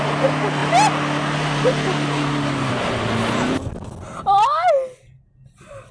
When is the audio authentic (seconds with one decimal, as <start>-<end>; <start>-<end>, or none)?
0.0-5.9